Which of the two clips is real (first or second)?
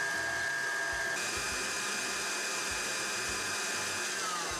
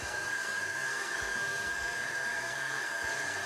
first